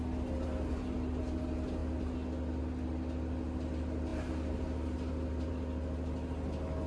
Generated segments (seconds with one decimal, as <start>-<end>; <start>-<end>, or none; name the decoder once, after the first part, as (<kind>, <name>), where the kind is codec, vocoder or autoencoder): none